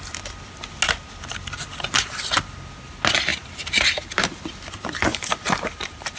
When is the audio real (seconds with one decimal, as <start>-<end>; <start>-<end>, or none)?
0.0-3.3; 4.4-5.1